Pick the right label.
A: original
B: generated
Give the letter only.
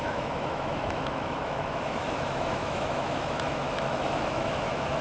B